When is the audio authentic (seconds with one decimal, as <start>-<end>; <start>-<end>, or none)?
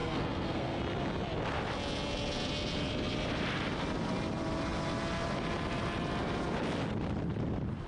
0.8-7.9